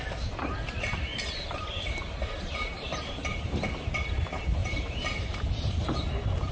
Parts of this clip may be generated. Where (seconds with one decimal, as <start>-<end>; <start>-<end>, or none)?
1.1-2.0; 2.7-3.7; 4.6-6.0